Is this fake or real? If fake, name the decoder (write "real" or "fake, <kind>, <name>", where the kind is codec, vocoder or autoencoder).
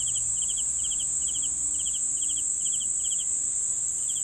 real